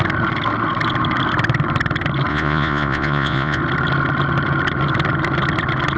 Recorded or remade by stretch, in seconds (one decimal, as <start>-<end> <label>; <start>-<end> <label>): 0.0-2.3 recorded; 2.3-3.6 remade; 3.6-6.0 recorded